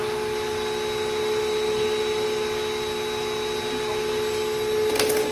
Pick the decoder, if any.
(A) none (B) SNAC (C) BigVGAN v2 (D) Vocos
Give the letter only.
A